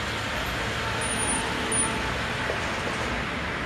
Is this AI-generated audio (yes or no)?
no